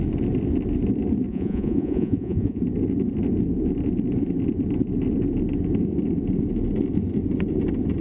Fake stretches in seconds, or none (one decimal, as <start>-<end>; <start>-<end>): 1.3-2.6